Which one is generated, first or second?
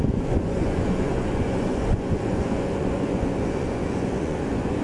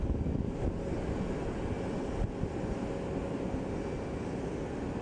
first